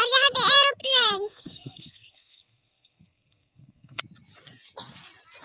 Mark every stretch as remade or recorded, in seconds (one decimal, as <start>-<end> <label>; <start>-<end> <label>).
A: 0.0-0.8 recorded; 0.8-4.0 remade; 4.0-5.4 recorded